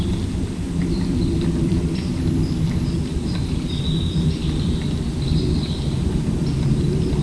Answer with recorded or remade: recorded